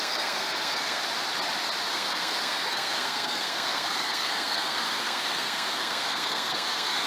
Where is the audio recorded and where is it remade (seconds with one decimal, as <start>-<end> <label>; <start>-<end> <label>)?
0.0-1.0 remade; 1.0-1.9 recorded; 1.9-7.1 remade